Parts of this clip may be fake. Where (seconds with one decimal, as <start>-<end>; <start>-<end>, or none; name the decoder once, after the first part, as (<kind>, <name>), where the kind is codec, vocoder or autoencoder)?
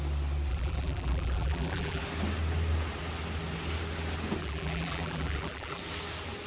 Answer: 0.5-2.0 (vocoder, BigVGAN v2); 4.4-5.8